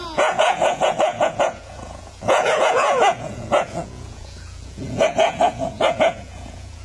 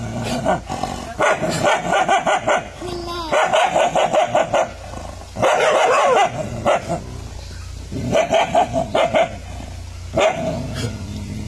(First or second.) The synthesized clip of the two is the first